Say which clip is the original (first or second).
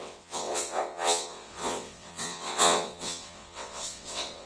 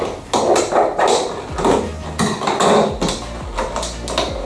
second